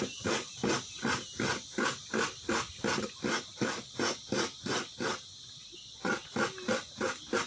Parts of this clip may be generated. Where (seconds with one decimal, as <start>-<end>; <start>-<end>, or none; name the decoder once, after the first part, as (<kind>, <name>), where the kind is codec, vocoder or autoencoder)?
5.6-6.3 (vocoder, Vocos)